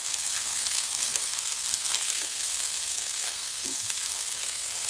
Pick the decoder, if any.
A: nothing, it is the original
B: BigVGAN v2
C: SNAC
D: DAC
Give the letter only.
C